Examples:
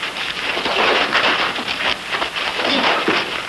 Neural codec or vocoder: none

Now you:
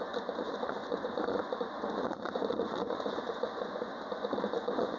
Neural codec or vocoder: vocoder, Vocos